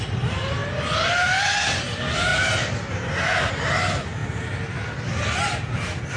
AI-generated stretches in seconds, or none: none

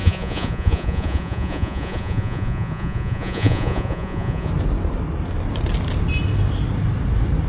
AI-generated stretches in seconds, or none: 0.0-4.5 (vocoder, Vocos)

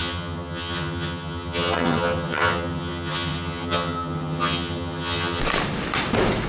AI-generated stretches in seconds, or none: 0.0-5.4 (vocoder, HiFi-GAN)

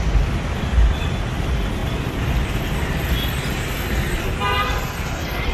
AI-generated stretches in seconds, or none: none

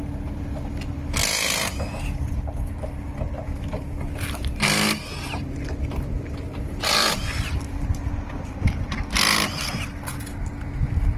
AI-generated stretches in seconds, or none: 7.0-8.1 (vocoder, BigVGAN v2)

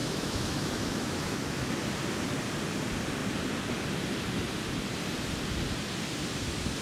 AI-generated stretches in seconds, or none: 0.0-1.7 (autoencoder, DAC-VAE)